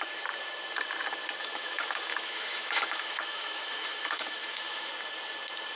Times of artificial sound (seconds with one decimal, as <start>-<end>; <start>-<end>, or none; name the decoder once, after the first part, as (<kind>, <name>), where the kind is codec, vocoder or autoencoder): 1.4-4.9 (autoencoder, DAC-VAE)